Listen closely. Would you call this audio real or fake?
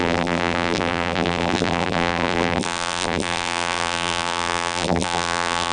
fake